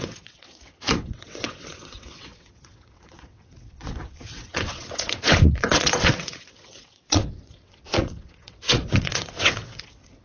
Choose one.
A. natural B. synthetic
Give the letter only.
B